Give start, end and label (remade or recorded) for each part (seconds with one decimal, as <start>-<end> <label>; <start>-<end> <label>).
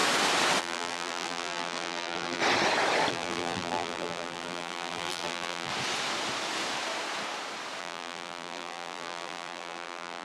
0.0-0.6 recorded; 0.6-2.4 remade; 2.4-3.1 recorded; 3.1-5.7 remade; 5.7-7.8 recorded; 7.8-10.2 remade